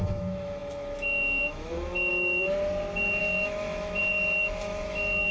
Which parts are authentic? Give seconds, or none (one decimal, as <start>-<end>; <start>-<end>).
2.1-3.2; 4.0-4.6